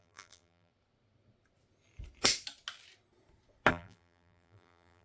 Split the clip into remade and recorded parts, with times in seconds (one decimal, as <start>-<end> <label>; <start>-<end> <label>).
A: 0.0-0.7 remade; 0.7-3.7 recorded; 3.7-5.0 remade

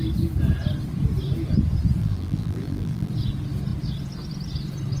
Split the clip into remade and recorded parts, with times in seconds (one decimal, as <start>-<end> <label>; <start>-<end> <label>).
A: 0.0-2.0 recorded; 2.0-3.1 remade; 3.1-5.0 recorded